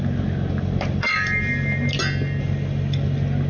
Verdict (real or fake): real